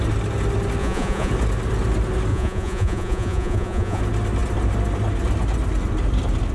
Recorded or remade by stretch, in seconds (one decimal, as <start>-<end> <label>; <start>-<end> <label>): 0.0-0.8 recorded; 0.8-1.3 remade; 1.3-2.3 recorded; 2.3-4.0 remade; 4.0-6.5 recorded